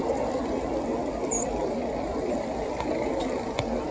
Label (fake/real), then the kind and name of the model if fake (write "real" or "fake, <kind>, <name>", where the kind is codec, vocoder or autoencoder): fake, vocoder, BigVGAN v2